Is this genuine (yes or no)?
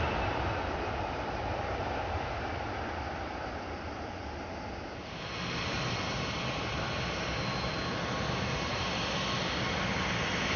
yes